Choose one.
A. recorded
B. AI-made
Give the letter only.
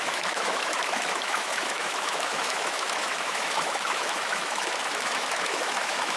B